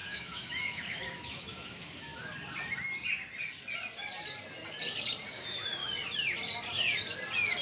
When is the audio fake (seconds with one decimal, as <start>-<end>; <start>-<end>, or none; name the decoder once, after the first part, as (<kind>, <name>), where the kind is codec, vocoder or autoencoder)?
0.0-2.1 (autoencoder, DAC-VAE); 5.3-5.8